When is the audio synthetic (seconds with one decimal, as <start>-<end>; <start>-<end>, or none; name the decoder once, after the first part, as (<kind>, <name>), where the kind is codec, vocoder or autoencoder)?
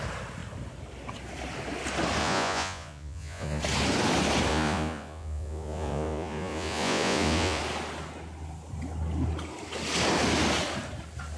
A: 2.2-3.6 (vocoder, Vocos); 4.5-7.6